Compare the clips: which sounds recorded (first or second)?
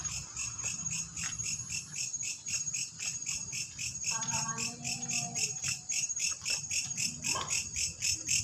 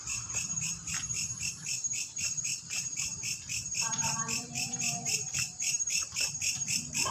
first